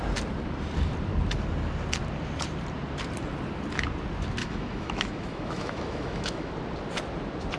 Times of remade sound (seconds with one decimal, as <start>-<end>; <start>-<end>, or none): 4.4-6.5